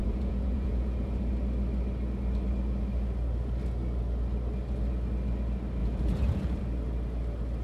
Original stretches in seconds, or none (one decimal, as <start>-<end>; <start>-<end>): 1.3-5.8; 6.6-7.6